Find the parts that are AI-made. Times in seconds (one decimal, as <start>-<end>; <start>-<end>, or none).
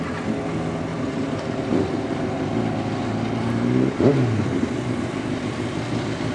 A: 0.9-2.4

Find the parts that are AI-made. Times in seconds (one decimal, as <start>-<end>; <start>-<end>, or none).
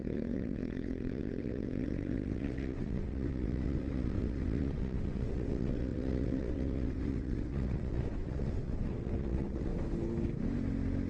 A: 0.0-9.7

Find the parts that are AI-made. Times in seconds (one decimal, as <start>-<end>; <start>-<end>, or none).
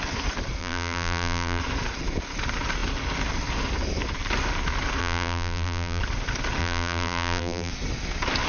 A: 0.6-1.6; 5.0-6.0; 6.6-7.7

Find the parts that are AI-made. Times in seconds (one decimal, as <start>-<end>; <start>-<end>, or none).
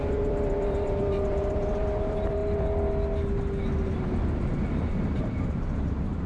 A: 0.0-2.4; 5.2-6.3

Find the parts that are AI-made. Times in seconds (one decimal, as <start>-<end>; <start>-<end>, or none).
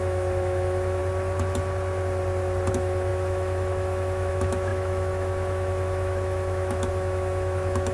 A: 0.0-1.0; 2.7-7.9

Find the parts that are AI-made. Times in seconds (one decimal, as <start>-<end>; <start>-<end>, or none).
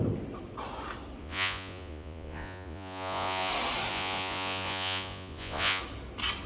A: 1.2-3.5; 3.9-5.8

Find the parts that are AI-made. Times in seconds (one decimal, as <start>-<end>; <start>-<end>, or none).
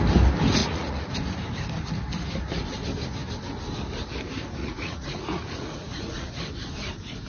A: 0.6-1.1; 4.6-6.3